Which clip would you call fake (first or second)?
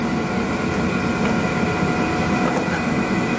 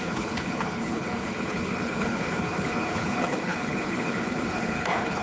second